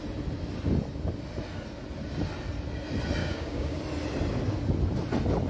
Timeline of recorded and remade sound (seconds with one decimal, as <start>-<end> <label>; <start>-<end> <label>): 0.0-3.2 recorded; 3.2-3.8 remade; 3.8-5.5 recorded